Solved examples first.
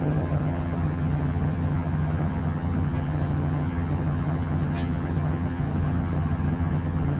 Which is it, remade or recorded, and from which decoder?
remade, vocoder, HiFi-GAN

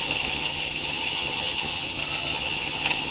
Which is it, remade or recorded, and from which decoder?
remade, vocoder, HiFi-GAN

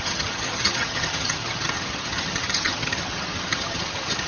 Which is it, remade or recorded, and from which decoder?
remade, vocoder, HiFi-GAN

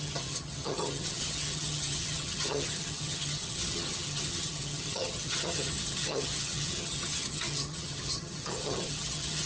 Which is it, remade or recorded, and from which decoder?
remade, vocoder, HiFi-GAN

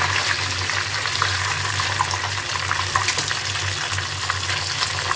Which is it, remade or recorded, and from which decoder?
recorded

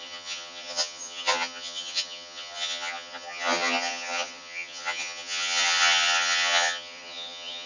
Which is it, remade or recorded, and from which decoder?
remade, vocoder, HiFi-GAN